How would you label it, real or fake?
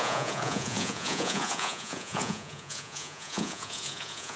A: fake